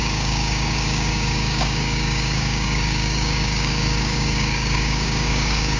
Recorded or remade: remade